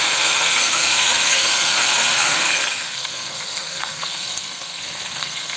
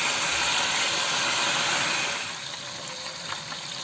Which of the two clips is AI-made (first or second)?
first